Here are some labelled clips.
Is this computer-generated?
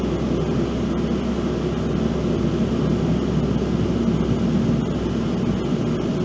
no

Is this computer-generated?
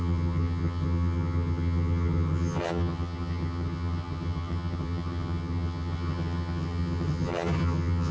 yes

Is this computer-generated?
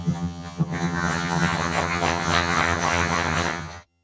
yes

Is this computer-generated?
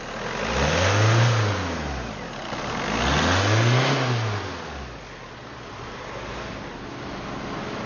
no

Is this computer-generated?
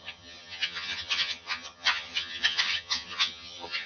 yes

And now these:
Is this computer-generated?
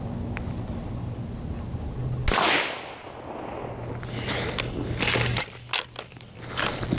no